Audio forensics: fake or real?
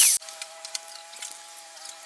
real